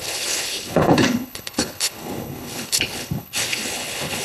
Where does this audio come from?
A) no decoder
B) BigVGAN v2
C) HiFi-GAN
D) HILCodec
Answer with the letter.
D